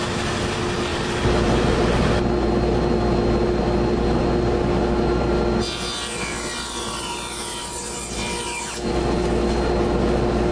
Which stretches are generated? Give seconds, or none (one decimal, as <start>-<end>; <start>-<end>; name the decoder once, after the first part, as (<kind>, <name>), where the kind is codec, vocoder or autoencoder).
0.9-2.1 (vocoder, BigVGAN v2)